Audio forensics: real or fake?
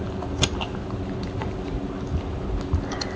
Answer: real